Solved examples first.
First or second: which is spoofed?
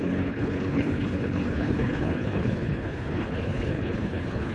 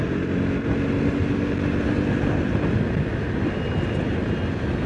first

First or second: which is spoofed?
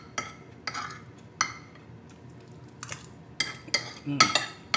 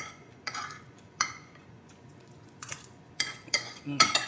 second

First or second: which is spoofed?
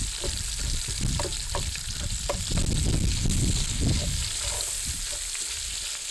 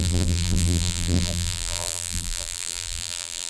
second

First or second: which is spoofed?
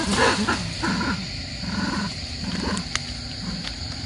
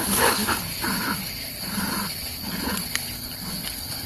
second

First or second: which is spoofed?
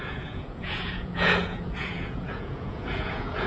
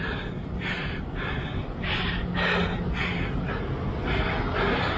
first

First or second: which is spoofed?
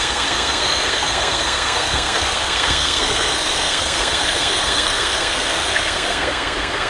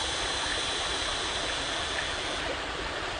first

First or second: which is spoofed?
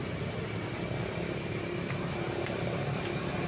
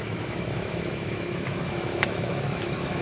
second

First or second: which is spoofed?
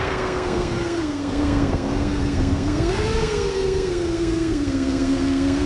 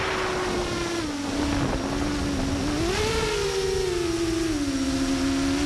first